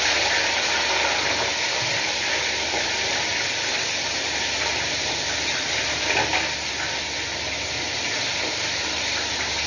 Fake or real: real